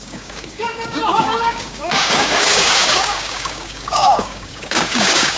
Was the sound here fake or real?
fake